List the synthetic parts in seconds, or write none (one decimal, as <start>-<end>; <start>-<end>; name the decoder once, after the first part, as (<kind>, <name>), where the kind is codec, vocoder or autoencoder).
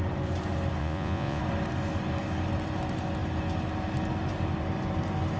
0.8-1.4 (vocoder, Vocos)